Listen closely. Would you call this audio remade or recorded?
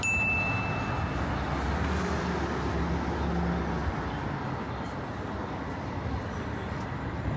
recorded